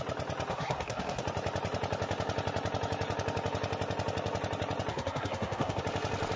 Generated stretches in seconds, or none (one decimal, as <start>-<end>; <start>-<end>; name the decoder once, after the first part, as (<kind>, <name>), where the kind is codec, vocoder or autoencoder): 0.5-1.2 (codec, SNAC); 4.9-5.8